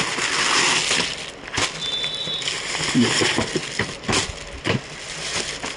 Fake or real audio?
real